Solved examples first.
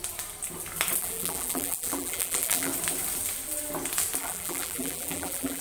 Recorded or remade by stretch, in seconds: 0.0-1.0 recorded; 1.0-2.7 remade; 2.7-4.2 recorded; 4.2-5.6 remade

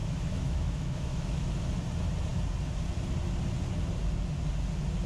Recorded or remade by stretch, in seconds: 0.0-1.5 remade; 1.5-5.1 recorded

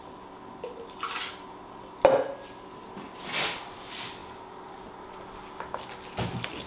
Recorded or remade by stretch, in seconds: 0.0-6.7 recorded

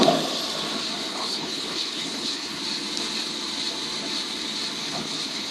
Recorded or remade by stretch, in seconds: 0.0-1.1 recorded; 1.1-2.6 remade; 2.6-4.8 recorded; 4.8-5.5 remade

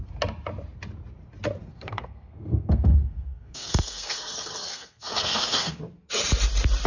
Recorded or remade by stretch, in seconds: 0.0-1.7 recorded; 1.7-5.8 remade; 5.8-6.9 recorded

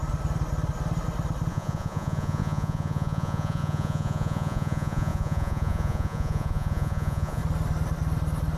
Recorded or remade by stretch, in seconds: 0.0-1.5 recorded; 1.5-7.4 remade; 7.4-8.6 recorded

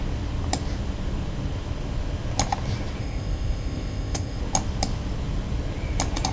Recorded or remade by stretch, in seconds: 0.0-3.0 recorded; 3.0-4.4 remade; 4.4-6.3 recorded